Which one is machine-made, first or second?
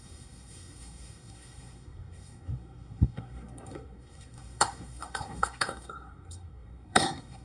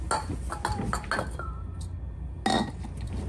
first